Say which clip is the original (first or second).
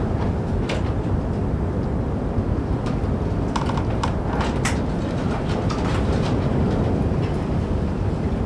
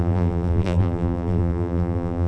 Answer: first